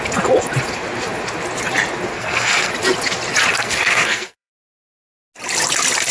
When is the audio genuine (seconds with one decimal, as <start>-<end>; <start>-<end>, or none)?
0.0-2.1; 2.7-3.5; 4.5-6.1